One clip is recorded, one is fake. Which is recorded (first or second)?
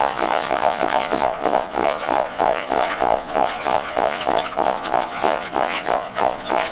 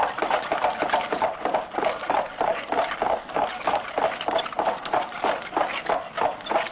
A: second